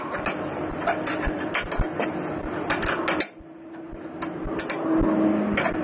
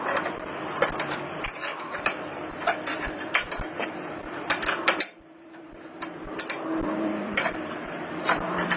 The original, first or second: first